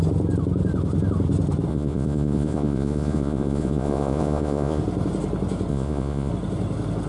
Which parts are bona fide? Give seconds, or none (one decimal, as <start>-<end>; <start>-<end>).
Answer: 0.0-1.7; 4.8-5.7; 6.3-7.1

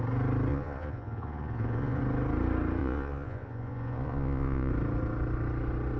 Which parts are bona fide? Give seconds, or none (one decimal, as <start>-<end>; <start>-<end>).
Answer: 0.0-0.5; 2.0-2.8; 4.7-6.0

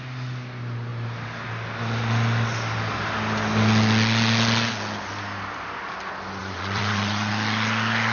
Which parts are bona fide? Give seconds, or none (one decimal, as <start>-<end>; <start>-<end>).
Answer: 0.0-6.4; 7.3-8.1

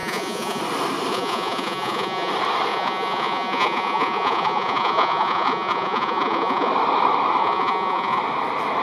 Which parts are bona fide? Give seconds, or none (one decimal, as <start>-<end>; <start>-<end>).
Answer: 0.6-1.1; 2.3-2.7; 6.7-7.4; 8.2-8.8

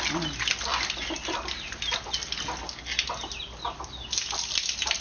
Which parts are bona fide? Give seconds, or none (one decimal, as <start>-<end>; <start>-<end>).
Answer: 0.0-5.0

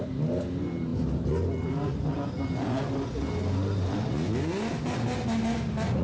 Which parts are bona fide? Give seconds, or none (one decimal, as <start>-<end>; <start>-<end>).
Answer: 0.0-6.0

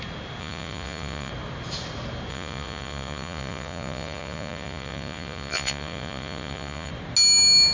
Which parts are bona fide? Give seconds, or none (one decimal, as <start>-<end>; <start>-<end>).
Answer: 0.0-0.4; 1.3-2.3; 6.9-7.7

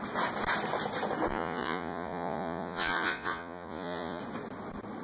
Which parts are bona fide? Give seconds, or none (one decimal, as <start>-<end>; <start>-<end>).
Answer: 0.0-1.3; 4.2-5.0